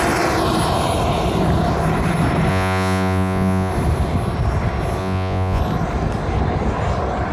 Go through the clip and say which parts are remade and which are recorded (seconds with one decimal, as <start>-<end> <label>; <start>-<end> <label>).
0.0-2.5 recorded; 2.5-3.7 remade; 3.7-5.0 recorded; 5.0-5.6 remade; 5.6-7.3 recorded